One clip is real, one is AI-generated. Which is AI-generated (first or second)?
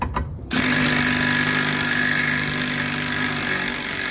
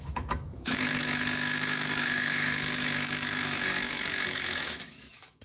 second